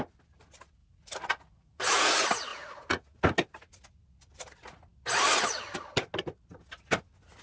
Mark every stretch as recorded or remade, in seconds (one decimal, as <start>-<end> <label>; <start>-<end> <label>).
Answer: 0.0-0.8 recorded; 0.8-2.1 remade; 2.1-2.5 recorded; 2.5-3.2 remade; 3.2-7.4 recorded